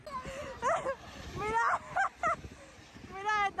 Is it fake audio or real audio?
real